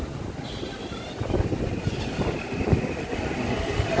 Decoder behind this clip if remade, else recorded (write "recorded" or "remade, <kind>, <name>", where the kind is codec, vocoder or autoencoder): recorded